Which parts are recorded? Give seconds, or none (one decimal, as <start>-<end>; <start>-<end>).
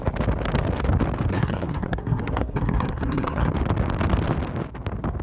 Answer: 0.0-1.3; 3.5-5.2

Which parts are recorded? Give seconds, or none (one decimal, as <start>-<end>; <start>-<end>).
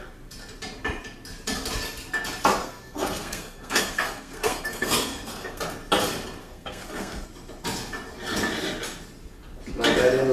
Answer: 0.0-2.6; 5.6-6.4; 7.3-10.3